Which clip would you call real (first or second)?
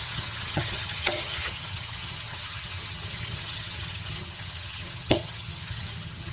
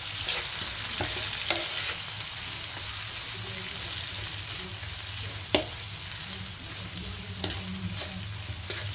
second